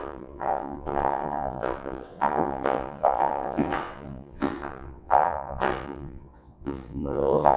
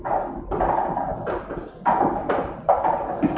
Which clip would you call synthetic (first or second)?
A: first